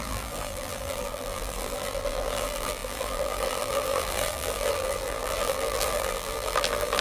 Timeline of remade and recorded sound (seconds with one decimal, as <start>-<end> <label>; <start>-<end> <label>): 0.0-7.0 remade